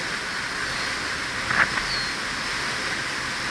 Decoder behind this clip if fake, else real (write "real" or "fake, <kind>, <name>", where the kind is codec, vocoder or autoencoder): real